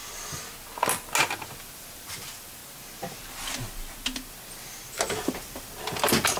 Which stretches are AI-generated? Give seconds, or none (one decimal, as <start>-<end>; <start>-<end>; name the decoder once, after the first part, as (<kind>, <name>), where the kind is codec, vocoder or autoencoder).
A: 1.6-2.6 (vocoder, BigVGAN v2); 5.2-6.4